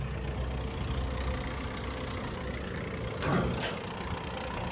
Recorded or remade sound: recorded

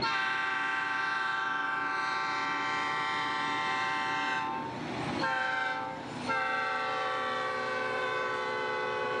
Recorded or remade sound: recorded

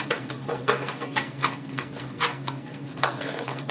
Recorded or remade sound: remade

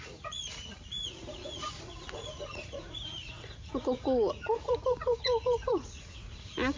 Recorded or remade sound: remade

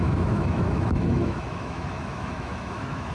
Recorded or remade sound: remade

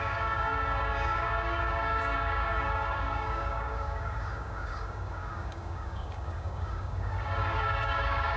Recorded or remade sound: remade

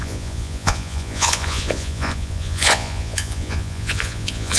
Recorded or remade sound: remade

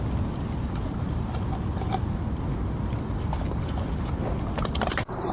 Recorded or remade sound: recorded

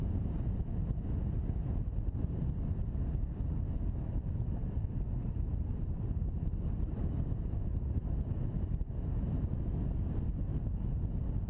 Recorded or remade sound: recorded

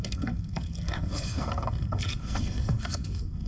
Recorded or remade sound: remade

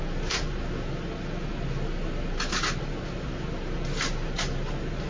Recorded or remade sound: recorded